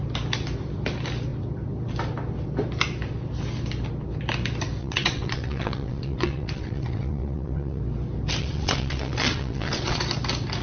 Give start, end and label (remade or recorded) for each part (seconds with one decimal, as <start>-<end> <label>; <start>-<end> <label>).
0.0-4.8 recorded; 4.8-7.8 remade; 7.8-8.4 recorded; 8.4-10.0 remade; 10.0-10.6 recorded